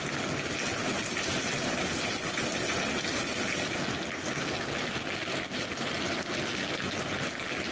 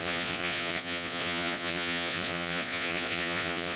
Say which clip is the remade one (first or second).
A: second